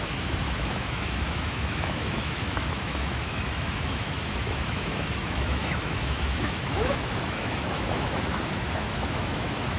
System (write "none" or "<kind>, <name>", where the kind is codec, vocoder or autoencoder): autoencoder, DAC-VAE